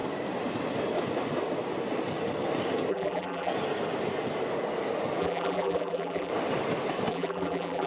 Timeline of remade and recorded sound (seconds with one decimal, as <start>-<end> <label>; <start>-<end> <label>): 0.0-2.9 recorded; 2.9-3.5 remade; 3.5-5.2 recorded; 5.2-6.3 remade; 6.3-7.1 recorded; 7.1-7.9 remade